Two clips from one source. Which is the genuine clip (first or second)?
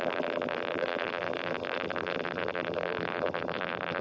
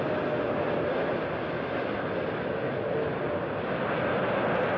second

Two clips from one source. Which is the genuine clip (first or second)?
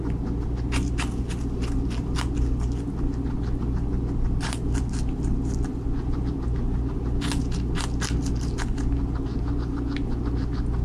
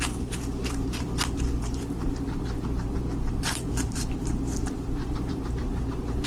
first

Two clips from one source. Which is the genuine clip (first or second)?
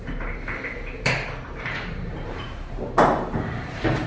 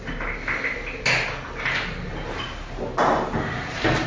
second